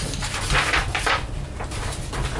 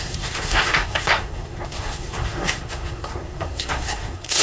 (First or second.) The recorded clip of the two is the first